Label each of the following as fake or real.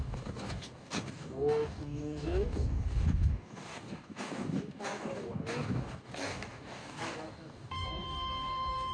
fake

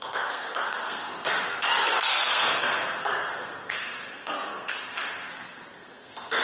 fake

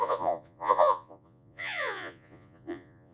fake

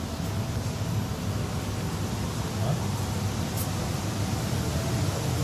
real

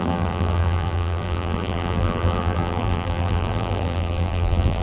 fake